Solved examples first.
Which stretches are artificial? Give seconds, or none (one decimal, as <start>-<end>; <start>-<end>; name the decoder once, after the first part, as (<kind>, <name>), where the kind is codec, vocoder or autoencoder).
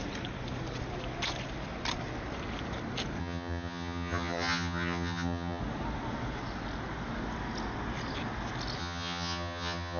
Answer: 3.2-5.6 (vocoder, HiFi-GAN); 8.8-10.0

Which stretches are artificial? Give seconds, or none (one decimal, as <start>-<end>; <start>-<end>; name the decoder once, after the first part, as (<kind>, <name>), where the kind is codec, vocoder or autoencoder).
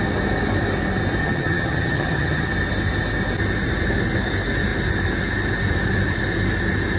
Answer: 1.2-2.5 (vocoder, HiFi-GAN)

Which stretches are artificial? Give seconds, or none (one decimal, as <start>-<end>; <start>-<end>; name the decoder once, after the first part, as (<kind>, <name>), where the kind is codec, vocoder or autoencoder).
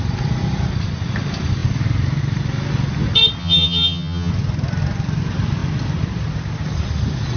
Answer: 3.4-4.3 (vocoder, HiFi-GAN)